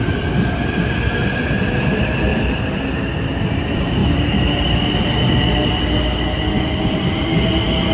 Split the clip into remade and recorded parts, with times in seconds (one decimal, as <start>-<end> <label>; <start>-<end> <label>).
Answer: 0.0-2.3 recorded; 2.3-3.3 remade; 3.3-4.0 recorded; 4.0-5.4 remade; 5.4-7.9 recorded